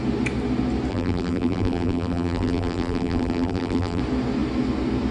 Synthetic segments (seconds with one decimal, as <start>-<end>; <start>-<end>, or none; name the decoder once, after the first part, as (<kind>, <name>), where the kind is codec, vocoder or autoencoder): 0.9-4.0 (vocoder, BigVGAN v2)